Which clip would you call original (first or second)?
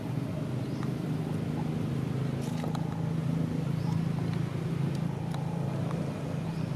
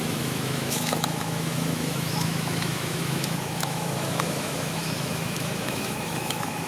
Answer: first